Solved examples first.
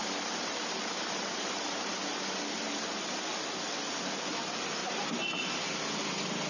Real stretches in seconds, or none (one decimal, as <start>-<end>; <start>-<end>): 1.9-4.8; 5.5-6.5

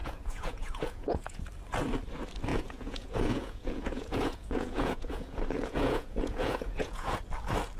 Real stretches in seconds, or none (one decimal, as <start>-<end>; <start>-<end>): 1.4-2.5; 7.2-7.8

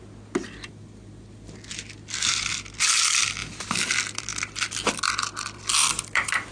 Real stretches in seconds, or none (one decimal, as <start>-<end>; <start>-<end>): 0.0-6.5

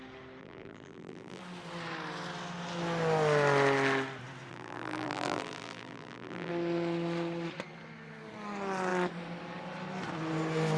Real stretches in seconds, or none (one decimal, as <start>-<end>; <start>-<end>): 0.0-0.4; 1.4-4.5; 6.5-10.8